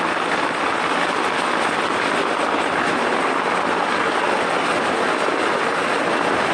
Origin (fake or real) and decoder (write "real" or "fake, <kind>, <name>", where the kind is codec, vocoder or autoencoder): real